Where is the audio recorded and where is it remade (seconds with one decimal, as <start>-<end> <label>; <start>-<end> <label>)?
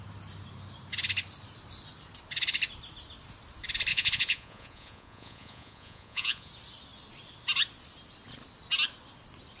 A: 0.0-3.9 recorded; 3.9-6.5 remade; 6.5-9.6 recorded